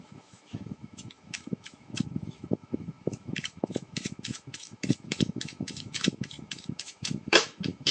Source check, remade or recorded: remade